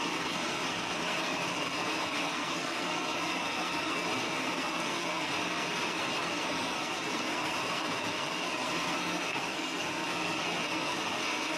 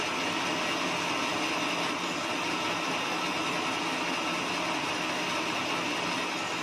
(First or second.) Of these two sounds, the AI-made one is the first